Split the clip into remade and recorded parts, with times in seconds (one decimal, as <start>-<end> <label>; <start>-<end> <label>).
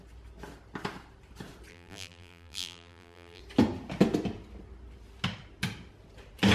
0.0-1.7 recorded; 1.7-3.4 remade; 3.4-6.5 recorded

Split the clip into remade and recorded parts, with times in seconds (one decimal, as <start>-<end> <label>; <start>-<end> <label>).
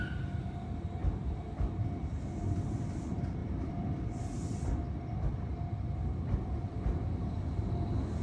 0.0-1.0 recorded; 1.0-2.9 remade; 2.9-3.4 recorded; 3.4-4.2 remade; 4.2-8.2 recorded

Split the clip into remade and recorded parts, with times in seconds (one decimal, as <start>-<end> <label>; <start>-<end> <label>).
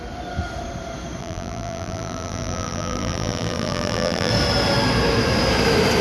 0.0-1.2 recorded; 1.2-4.3 remade; 4.3-6.0 recorded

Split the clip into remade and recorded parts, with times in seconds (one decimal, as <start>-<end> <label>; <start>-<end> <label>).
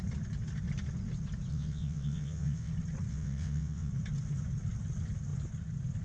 0.0-1.5 recorded; 1.5-2.7 remade; 2.7-3.1 recorded; 3.1-3.9 remade; 3.9-6.0 recorded